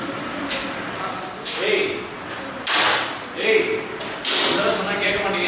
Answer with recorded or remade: recorded